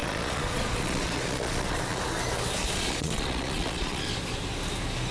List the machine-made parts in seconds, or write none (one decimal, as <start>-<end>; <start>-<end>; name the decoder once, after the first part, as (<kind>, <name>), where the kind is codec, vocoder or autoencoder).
0.0-2.0 (vocoder, Vocos); 2.6-4.1